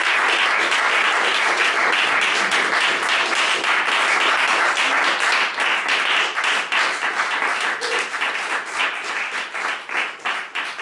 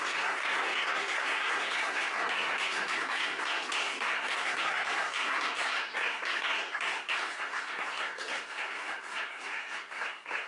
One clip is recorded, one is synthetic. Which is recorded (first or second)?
first